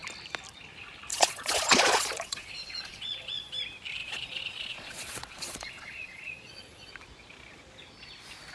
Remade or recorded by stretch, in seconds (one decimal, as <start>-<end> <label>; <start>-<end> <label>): 0.0-1.1 recorded; 1.1-3.5 remade; 3.5-4.0 recorded; 4.0-6.9 remade; 6.9-8.5 recorded